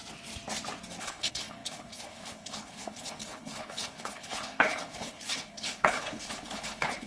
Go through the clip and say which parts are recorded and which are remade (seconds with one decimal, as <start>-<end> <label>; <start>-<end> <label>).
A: 0.0-1.0 recorded; 1.0-7.1 remade